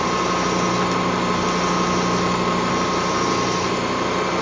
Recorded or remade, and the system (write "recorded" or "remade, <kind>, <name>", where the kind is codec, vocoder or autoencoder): recorded